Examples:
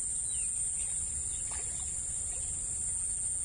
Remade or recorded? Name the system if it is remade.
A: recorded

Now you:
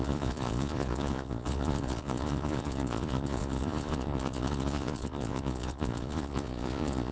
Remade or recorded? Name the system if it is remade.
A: remade, vocoder, Vocos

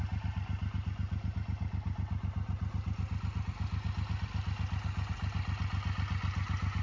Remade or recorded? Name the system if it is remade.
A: recorded